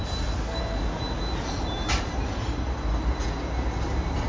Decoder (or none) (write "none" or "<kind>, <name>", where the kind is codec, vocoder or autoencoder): none